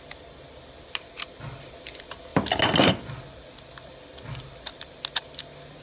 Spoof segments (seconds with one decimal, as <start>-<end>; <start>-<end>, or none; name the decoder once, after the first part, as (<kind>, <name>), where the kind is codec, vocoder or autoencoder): none